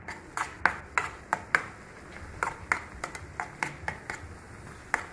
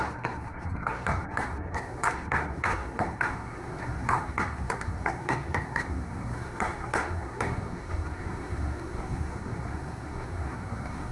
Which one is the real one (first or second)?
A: first